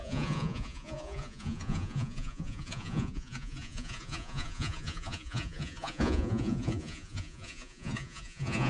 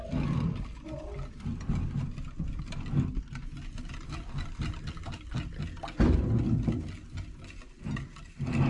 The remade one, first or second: first